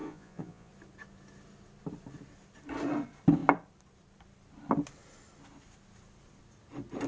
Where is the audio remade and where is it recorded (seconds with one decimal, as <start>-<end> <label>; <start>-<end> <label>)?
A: 0.0-0.7 remade; 0.7-7.1 recorded